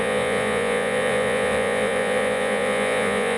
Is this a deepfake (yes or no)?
yes